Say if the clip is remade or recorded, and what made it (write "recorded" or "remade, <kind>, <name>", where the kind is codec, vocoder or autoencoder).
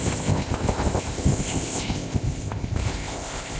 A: remade, codec, ZipCodec